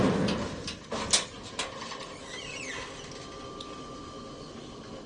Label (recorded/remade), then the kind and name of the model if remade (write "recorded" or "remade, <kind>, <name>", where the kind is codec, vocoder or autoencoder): recorded